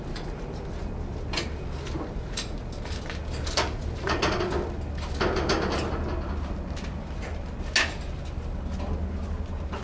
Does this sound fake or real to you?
real